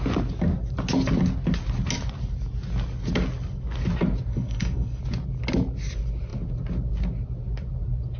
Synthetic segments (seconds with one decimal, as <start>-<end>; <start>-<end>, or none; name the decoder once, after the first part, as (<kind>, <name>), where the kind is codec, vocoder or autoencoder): 4.3-5.0 (codec, SNAC)